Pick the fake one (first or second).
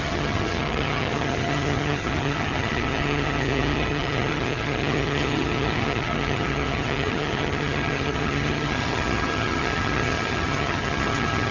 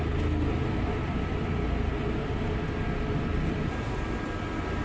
first